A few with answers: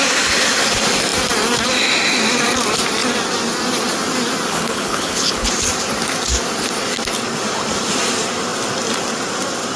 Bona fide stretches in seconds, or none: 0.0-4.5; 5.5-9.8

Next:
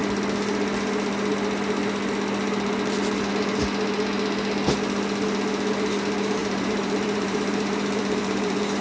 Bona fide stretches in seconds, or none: 0.0-6.4

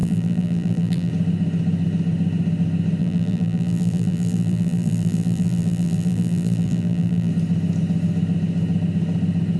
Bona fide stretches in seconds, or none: 1.1-3.0; 7.3-9.6

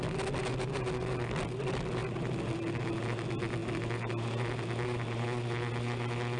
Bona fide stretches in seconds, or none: 0.0-6.4

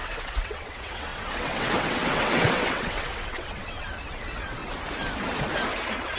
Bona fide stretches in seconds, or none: 4.6-6.2